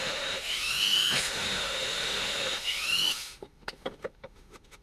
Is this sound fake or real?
fake